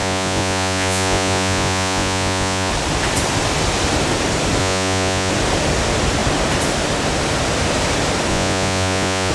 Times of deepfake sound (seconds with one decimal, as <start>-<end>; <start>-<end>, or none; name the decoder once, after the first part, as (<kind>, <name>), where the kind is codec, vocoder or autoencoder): 0.0-2.7 (vocoder, Vocos); 4.6-5.3; 8.3-9.3